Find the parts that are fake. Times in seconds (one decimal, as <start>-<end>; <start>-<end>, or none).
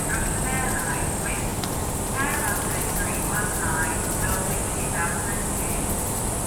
none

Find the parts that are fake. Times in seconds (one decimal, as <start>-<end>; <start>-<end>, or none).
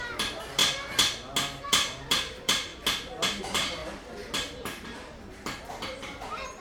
0.0-0.6; 1.6-2.7; 3.4-3.8; 4.6-6.6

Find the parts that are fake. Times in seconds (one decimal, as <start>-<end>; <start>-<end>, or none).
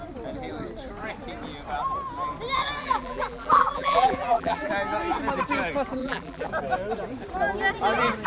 2.8-4.7; 6.0-6.5